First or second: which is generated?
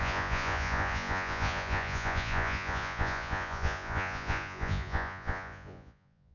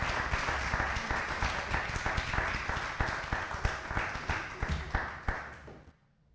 first